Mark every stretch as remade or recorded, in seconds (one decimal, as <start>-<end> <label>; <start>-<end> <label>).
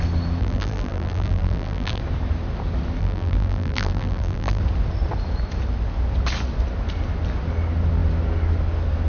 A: 0.0-0.4 recorded; 0.4-2.0 remade; 2.0-3.0 recorded; 3.0-4.6 remade; 4.6-9.1 recorded